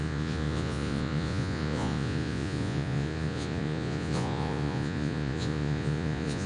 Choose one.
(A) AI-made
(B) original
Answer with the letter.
A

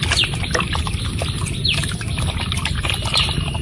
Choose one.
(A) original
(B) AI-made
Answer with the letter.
A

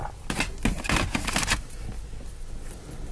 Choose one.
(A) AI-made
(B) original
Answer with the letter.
B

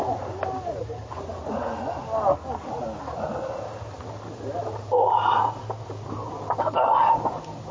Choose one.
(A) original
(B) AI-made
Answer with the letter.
A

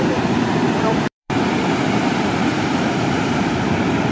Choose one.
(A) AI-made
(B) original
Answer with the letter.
A